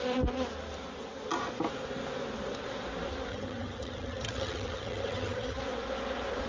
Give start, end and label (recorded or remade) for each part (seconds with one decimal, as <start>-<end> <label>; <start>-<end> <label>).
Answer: 0.0-3.3 recorded; 3.3-5.6 remade; 5.6-6.5 recorded

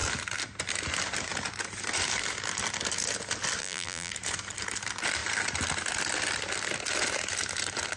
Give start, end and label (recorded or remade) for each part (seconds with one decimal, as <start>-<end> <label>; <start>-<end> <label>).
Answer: 0.0-3.6 recorded; 3.6-4.1 remade; 4.1-8.0 recorded

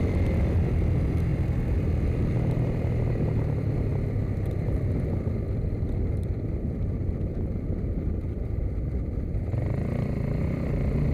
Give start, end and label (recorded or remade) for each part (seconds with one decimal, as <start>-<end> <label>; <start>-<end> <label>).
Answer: 0.0-11.1 recorded

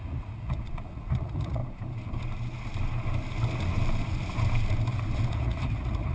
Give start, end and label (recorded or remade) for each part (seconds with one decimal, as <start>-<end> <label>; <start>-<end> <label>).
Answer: 0.0-1.6 remade; 1.6-5.3 recorded; 5.3-6.1 remade